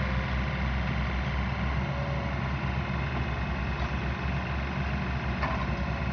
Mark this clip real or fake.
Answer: real